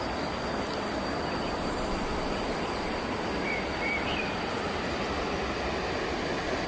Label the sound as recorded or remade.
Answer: recorded